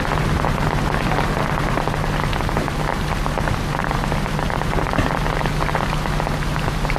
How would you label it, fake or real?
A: real